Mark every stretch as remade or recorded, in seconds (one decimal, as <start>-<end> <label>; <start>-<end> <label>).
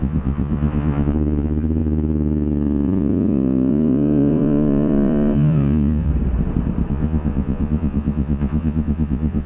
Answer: 0.0-6.1 remade; 6.1-6.9 recorded; 6.9-9.5 remade